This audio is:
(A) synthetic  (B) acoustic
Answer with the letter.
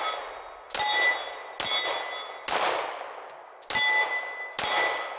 B